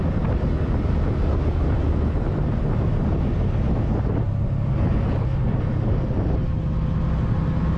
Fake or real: real